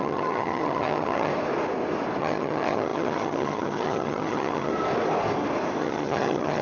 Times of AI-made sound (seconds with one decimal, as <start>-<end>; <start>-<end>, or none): 0.0-1.3; 2.2-4.7; 5.8-6.6